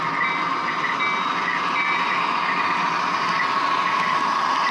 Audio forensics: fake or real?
real